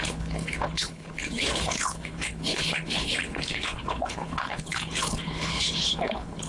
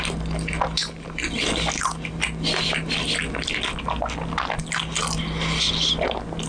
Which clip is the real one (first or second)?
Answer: second